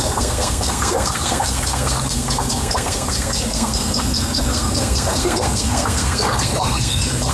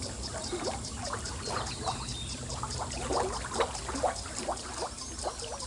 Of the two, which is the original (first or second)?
second